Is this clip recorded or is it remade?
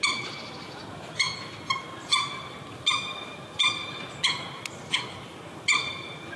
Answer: recorded